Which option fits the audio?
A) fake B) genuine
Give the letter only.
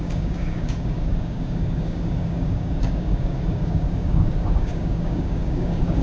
A